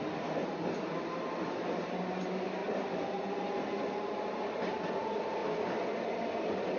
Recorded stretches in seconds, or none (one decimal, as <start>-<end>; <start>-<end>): 0.0-6.8